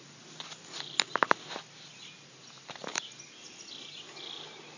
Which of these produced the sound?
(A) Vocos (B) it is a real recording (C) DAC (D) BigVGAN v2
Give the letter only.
B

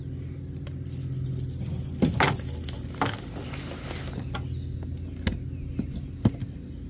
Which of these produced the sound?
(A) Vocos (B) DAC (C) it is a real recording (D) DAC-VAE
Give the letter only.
C